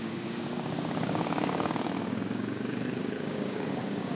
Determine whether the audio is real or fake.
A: fake